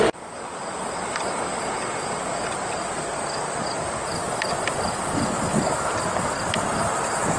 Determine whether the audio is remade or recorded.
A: recorded